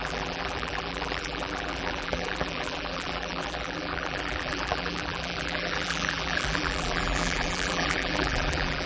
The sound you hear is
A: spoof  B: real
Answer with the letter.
A